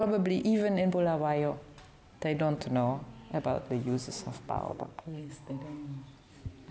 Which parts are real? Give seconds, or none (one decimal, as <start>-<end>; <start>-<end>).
0.0-4.7; 5.3-6.7